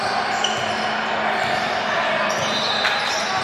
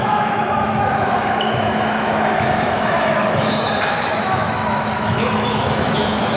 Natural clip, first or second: first